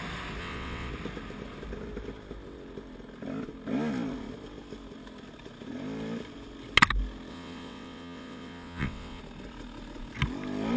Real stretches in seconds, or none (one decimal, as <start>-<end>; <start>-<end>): 0.0-0.4; 0.9-7.3; 9.2-10.8